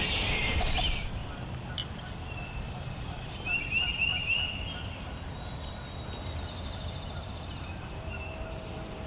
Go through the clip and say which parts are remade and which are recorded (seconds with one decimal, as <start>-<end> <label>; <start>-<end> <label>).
0.0-1.2 remade; 1.2-2.7 recorded; 2.7-3.9 remade; 3.9-7.2 recorded; 7.2-9.1 remade